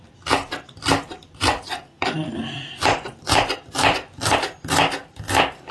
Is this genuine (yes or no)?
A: no